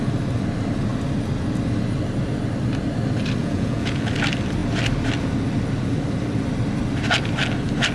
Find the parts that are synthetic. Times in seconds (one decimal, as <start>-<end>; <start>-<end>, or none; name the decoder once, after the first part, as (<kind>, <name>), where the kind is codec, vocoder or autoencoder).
3.4-4.1 (vocoder, Vocos)